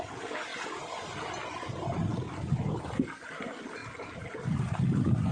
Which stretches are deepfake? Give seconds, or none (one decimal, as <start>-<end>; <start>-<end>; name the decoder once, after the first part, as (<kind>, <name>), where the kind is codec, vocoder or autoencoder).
none